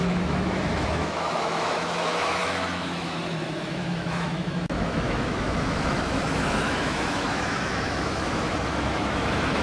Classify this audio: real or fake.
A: fake